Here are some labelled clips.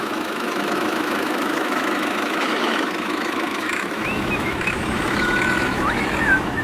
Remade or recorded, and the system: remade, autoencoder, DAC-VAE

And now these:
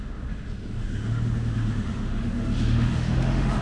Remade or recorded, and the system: remade, autoencoder, DAC-VAE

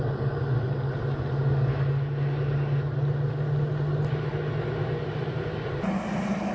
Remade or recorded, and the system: recorded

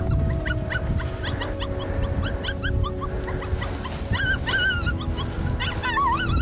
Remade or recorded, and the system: recorded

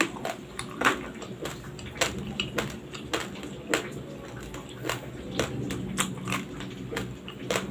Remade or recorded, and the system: recorded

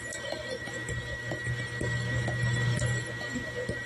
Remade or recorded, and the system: recorded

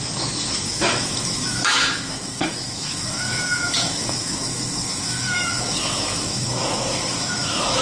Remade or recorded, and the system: remade, autoencoder, DAC-VAE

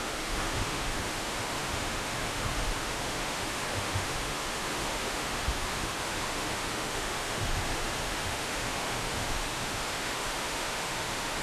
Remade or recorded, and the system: remade, autoencoder, DAC-VAE